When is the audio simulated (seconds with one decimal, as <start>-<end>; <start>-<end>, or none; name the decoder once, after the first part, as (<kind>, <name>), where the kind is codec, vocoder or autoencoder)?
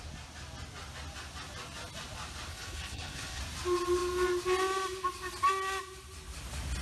2.5-3.4 (codec, HILCodec)